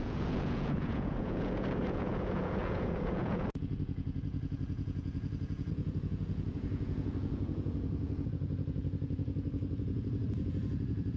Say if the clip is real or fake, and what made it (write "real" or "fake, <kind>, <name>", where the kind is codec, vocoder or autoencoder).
fake, vocoder, Vocos